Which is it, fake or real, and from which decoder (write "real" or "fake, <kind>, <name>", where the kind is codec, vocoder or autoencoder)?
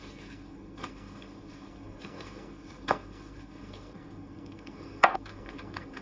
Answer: fake, codec, SNAC